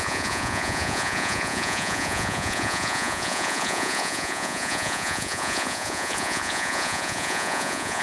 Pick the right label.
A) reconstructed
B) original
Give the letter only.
A